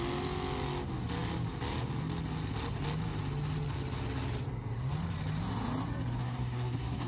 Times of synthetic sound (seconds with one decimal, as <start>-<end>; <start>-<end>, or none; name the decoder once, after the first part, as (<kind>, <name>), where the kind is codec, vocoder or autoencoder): 6.2-7.1 (codec, SNAC)